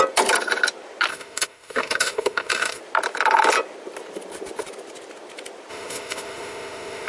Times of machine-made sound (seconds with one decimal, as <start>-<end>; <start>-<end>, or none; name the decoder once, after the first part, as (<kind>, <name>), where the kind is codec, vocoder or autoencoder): 1.1-2.8 (autoencoder, DAC-VAE); 5.7-7.1